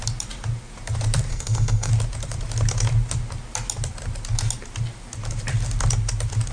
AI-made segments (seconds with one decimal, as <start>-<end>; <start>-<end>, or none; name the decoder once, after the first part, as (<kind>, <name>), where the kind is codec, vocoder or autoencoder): 1.3-1.9 (codec, SNAC)